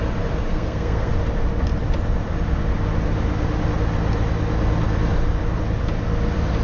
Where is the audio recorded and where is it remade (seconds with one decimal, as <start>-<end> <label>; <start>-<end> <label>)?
0.0-0.5 recorded; 0.5-1.1 remade; 1.1-6.6 recorded